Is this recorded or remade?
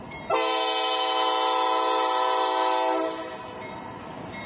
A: recorded